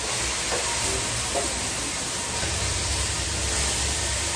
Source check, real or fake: real